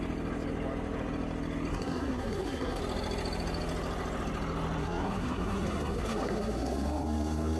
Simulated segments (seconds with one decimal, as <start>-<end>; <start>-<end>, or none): 1.7-2.8; 4.8-7.6